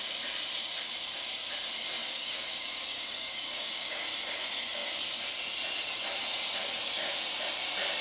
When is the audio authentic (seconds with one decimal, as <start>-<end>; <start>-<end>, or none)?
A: 0.0-2.0; 4.0-8.0